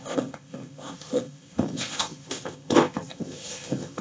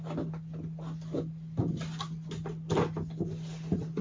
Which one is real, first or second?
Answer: second